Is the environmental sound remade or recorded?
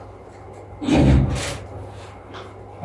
recorded